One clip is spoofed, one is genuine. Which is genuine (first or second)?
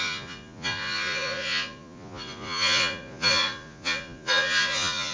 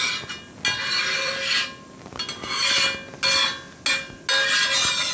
second